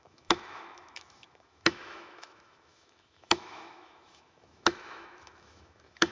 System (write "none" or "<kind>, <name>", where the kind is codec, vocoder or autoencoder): autoencoder, DAC-VAE